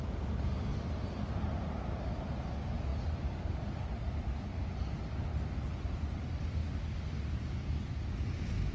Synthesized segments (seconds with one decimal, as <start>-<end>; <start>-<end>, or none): none